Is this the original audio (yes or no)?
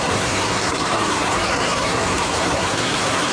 no